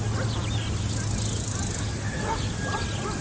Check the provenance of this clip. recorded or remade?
recorded